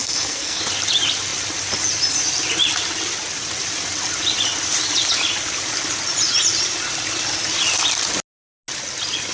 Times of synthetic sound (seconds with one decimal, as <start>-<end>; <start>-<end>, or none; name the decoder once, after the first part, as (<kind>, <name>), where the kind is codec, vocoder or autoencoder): 0.0-0.6 (codec, SNAC)